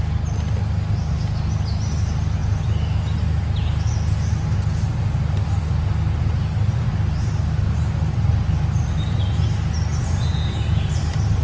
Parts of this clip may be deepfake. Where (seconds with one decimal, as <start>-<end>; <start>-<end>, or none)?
9.9-11.0